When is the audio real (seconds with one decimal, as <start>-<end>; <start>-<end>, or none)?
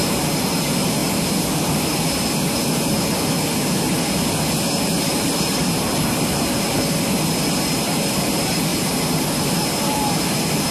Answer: 0.0-1.0; 3.0-5.1; 5.9-8.7